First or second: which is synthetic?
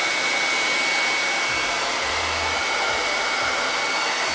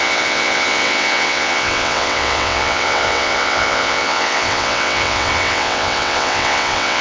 second